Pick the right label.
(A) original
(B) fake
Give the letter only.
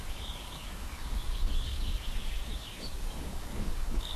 B